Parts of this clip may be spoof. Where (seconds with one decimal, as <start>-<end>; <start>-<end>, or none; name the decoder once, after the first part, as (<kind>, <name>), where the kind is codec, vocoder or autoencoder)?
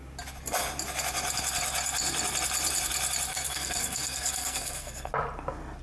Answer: 3.3-5.1 (codec, SNAC)